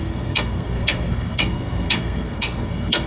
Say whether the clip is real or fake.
fake